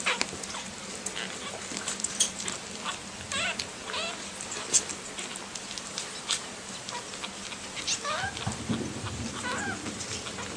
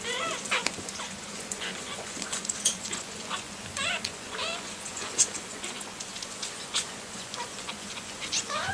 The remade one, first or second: second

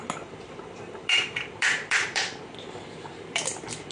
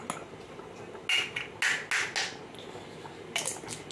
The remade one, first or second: first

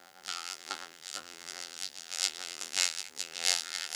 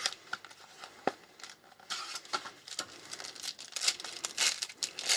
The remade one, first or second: first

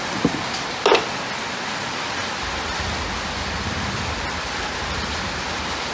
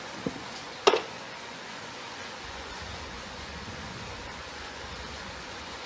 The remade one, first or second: second